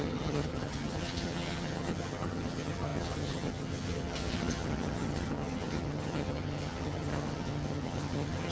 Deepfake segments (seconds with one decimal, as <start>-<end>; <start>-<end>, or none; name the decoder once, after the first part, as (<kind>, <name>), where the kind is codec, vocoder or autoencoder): 0.0-8.5 (vocoder, HiFi-GAN)